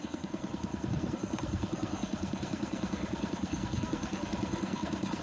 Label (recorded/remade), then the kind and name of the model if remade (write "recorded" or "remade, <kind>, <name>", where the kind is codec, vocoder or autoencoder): remade, codec, SNAC